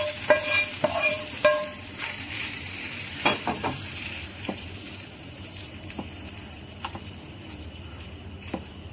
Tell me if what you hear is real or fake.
fake